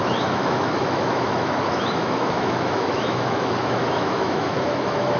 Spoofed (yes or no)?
yes